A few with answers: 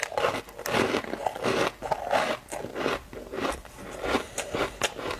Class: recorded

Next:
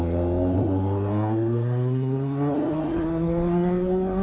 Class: remade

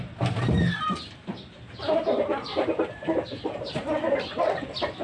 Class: recorded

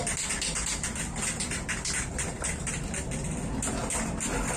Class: recorded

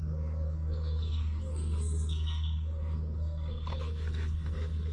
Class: remade